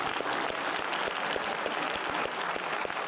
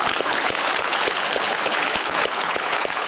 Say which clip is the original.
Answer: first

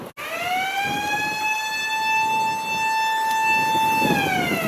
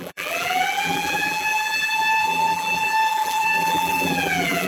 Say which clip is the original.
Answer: first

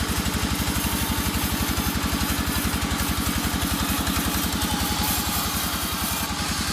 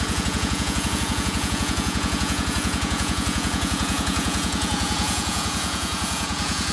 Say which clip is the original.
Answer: first